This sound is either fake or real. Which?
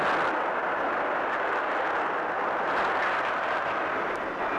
real